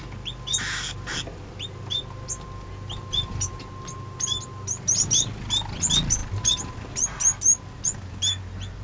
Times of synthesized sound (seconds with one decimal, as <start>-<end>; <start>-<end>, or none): none